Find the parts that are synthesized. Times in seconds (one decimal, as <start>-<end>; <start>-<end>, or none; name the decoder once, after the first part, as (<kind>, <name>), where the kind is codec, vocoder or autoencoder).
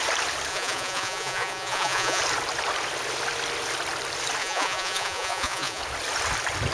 0.5-2.2 (vocoder, Vocos); 4.4-5.8